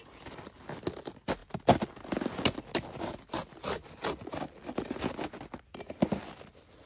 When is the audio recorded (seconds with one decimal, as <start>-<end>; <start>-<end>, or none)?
0.0-6.9